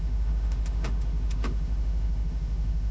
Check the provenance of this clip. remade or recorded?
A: remade